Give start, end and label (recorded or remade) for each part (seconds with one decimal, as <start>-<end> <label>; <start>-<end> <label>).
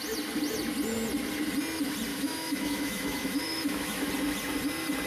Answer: 0.0-2.1 recorded; 2.1-4.1 remade; 4.1-5.1 recorded